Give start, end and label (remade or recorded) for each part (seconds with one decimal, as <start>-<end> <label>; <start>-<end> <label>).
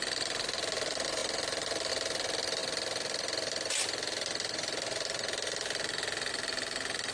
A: 0.0-7.1 recorded